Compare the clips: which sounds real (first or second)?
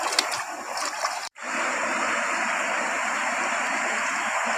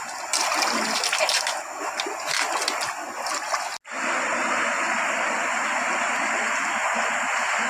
second